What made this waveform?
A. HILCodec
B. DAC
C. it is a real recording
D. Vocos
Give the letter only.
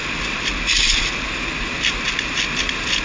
C